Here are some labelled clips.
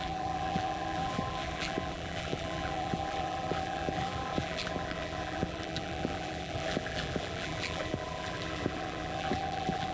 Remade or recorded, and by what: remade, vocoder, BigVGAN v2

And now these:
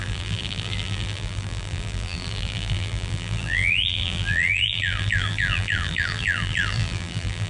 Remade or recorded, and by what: remade, vocoder, BigVGAN v2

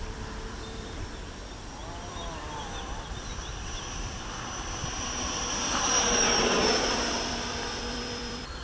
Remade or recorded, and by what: remade, vocoder, BigVGAN v2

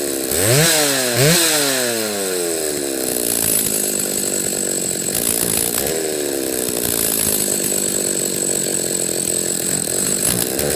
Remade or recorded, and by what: recorded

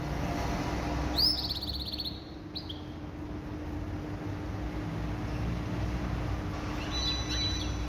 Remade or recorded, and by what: recorded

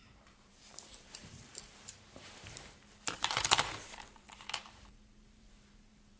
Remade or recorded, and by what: remade, vocoder, BigVGAN v2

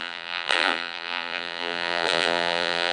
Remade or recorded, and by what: remade, vocoder, BigVGAN v2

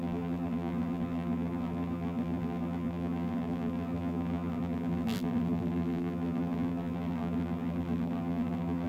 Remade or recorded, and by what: remade, vocoder, BigVGAN v2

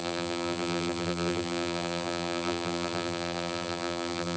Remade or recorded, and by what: remade, vocoder, BigVGAN v2